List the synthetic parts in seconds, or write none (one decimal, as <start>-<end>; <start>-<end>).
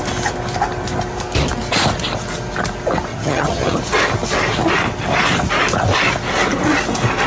3.1-3.8